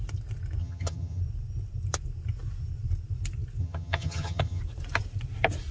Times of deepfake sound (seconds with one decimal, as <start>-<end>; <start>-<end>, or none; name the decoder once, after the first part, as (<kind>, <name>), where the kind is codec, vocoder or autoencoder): 0.6-1.2 (vocoder, HiFi-GAN); 3.6-4.6